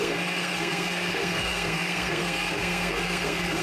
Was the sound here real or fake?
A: fake